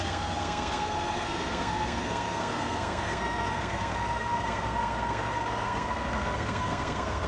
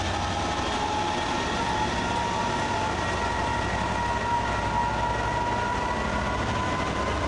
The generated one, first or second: first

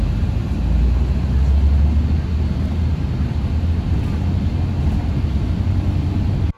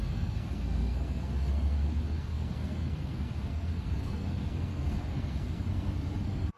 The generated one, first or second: second